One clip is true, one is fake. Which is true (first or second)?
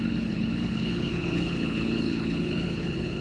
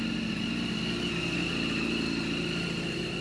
second